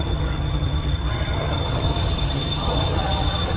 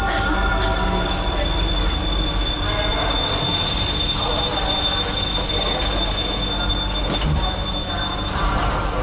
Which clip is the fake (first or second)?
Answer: first